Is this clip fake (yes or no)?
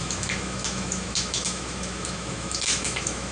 yes